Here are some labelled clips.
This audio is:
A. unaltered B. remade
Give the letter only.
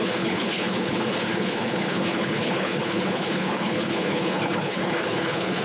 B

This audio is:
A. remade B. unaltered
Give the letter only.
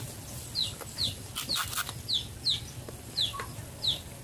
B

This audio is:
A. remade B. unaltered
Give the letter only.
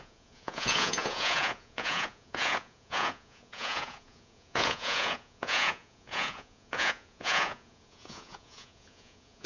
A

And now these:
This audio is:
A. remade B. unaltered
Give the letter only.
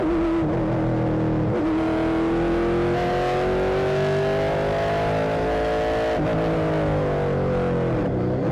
B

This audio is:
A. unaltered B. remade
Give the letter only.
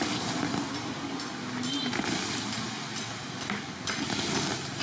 A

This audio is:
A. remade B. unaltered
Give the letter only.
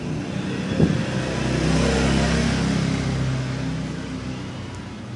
B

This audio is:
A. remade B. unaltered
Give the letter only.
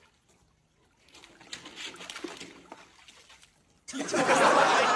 B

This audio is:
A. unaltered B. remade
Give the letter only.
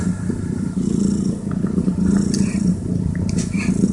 A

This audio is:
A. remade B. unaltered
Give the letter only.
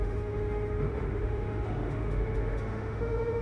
A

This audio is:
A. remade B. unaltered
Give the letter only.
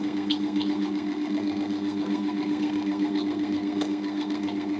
A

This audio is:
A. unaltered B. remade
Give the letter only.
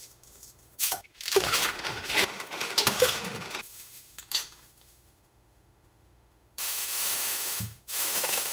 B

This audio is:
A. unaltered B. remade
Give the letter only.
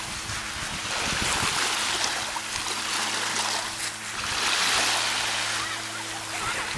A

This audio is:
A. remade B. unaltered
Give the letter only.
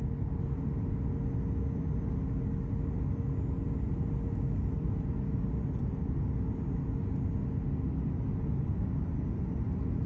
B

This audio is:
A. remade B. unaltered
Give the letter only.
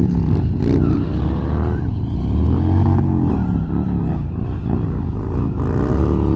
B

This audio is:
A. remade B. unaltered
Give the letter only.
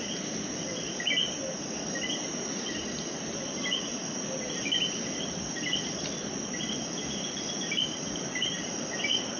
B